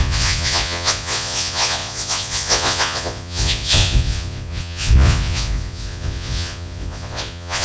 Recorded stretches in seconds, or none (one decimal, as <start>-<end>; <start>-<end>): none